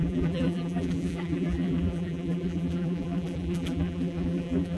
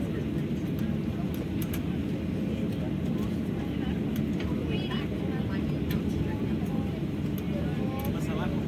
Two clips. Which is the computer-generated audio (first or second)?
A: first